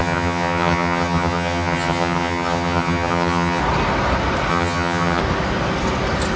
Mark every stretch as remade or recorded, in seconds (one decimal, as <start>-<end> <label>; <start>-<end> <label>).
0.0-3.6 remade; 3.6-4.5 recorded; 4.5-5.2 remade; 5.2-6.4 recorded